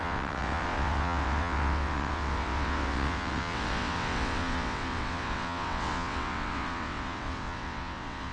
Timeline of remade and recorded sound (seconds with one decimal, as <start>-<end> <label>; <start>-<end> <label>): 0.0-8.3 remade